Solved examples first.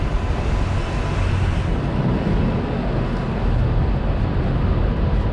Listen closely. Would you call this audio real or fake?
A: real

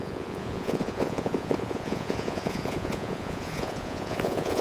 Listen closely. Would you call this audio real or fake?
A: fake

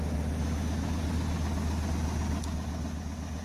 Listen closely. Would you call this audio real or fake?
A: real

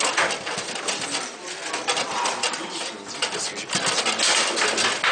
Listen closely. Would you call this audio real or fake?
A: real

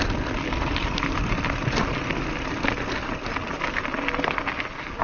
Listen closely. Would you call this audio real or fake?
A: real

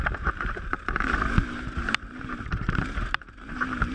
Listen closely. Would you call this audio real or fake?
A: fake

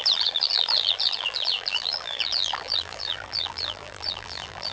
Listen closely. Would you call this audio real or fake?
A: fake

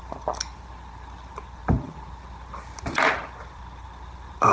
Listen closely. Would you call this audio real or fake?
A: real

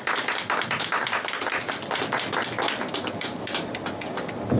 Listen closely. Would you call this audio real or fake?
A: real